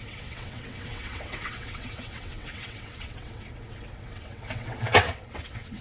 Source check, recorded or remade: remade